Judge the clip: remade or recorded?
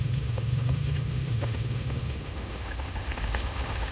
remade